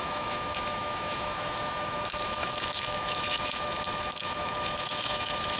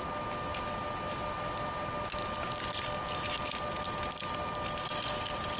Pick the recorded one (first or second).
second